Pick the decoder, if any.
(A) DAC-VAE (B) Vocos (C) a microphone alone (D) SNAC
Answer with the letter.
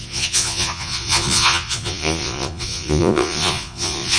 B